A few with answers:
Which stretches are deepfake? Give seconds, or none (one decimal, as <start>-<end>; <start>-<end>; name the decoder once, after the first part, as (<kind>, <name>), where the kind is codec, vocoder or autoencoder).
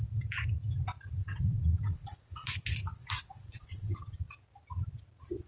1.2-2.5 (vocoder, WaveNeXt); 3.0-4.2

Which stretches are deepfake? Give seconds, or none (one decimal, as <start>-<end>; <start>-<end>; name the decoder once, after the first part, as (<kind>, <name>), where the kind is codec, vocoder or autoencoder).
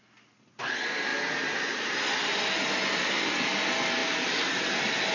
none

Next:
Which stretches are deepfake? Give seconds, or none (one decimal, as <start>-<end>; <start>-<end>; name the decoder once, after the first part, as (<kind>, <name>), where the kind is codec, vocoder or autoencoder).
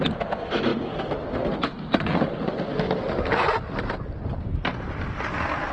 none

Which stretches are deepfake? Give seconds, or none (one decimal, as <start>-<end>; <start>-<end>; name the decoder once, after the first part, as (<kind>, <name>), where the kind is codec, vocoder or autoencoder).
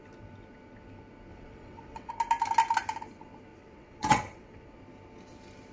1.3-2.1 (vocoder, WaveNeXt); 3.5-4.7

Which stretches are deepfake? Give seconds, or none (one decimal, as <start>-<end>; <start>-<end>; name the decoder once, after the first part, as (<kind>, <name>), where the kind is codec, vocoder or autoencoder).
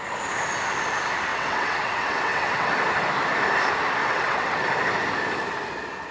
1.3-2.7 (vocoder, WaveNeXt); 4.0-4.6